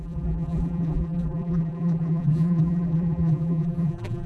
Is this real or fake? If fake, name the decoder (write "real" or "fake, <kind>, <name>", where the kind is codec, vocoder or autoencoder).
fake, vocoder, BigVGAN v2